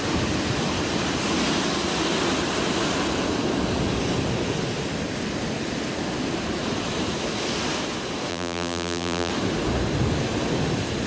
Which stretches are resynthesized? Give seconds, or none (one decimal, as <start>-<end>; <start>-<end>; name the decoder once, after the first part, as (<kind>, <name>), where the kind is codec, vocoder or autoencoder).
8.3-9.3 (vocoder, BigVGAN v2)